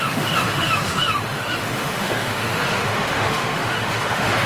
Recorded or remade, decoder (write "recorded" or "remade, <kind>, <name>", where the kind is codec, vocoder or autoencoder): remade, autoencoder, DAC-VAE